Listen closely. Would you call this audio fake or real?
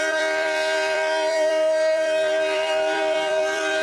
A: fake